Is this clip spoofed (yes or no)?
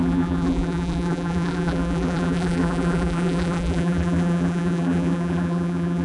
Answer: yes